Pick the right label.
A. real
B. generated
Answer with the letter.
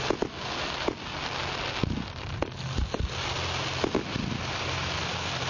A